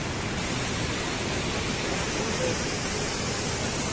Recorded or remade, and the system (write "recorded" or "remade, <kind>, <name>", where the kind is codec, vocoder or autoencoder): recorded